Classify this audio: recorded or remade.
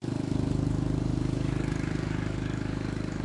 remade